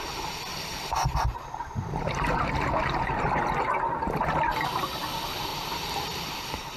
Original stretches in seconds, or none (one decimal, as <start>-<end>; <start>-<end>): 0.0-0.7; 4.8-5.5; 6.3-6.8